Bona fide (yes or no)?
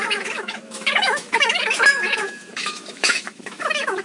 no